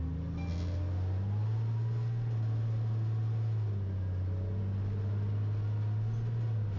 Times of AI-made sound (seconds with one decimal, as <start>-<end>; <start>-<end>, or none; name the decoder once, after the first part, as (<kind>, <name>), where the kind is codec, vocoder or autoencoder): none